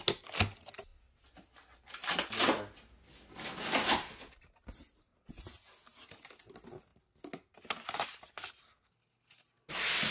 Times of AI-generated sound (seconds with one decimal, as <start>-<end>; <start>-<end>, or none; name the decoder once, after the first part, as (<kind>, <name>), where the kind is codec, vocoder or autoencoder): none